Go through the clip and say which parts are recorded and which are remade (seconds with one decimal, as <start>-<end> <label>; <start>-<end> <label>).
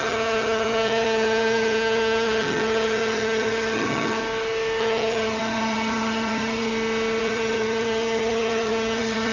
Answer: 0.0-4.2 remade; 4.2-4.8 recorded; 4.8-6.7 remade; 6.7-7.2 recorded; 7.2-9.3 remade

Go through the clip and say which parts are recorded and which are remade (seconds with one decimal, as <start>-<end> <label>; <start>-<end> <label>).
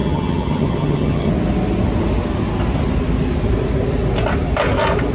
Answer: 0.0-1.3 remade; 1.3-5.1 recorded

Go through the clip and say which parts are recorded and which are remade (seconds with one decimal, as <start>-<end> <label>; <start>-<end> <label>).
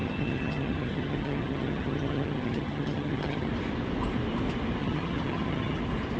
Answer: 0.0-3.5 remade; 3.5-4.8 recorded; 4.8-5.8 remade; 5.8-6.2 recorded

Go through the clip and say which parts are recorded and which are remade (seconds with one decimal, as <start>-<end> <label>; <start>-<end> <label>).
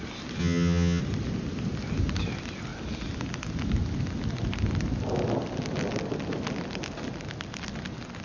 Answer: 0.0-0.4 recorded; 0.4-1.0 remade; 1.0-8.2 recorded